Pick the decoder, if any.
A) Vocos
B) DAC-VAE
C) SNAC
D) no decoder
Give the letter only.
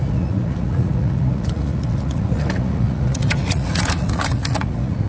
A